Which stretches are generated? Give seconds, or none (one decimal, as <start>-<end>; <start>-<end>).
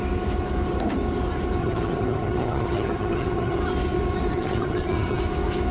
1.6-3.6; 4.3-5.2